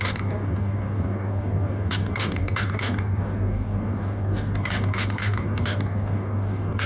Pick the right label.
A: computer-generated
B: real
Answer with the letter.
A